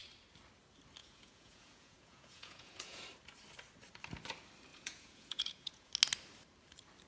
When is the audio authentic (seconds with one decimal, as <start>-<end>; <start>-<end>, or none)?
0.0-1.0; 3.0-4.7; 5.9-7.1